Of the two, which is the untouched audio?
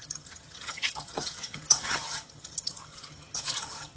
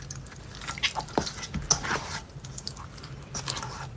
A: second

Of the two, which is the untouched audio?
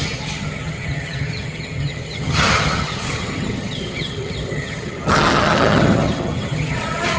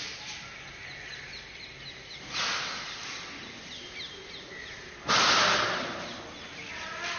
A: second